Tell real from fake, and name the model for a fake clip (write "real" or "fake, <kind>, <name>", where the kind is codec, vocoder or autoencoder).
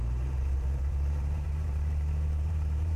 fake, vocoder, BigVGAN v2